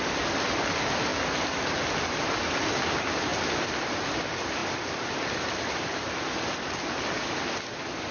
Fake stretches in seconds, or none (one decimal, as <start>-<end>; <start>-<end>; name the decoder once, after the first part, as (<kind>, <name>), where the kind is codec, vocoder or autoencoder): none